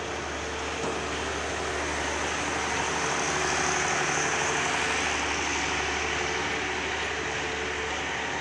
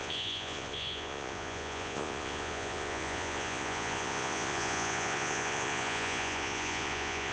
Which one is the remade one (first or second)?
second